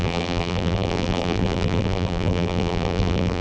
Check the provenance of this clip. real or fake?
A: fake